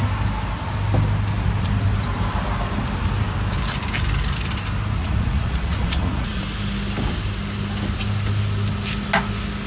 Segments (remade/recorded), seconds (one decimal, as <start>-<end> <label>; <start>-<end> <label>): 0.0-5.0 recorded; 5.0-6.4 remade; 6.4-9.7 recorded

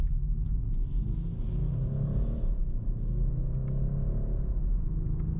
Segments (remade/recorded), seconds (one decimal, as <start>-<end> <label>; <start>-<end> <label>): 0.0-0.6 remade; 0.6-1.6 recorded; 1.6-2.5 remade; 2.5-5.4 recorded

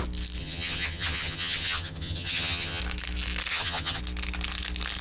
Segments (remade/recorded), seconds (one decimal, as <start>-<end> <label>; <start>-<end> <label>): 0.0-0.4 recorded; 0.4-2.8 remade; 2.8-3.5 recorded; 3.5-4.0 remade; 4.0-5.0 recorded

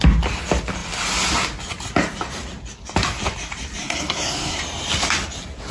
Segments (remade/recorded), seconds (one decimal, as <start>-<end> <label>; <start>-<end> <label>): 0.0-3.8 recorded; 3.8-4.6 remade; 4.6-5.7 recorded

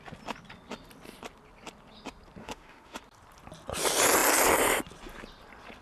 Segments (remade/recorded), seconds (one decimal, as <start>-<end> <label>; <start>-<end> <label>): 0.0-2.4 recorded; 2.4-3.0 remade; 3.0-5.8 recorded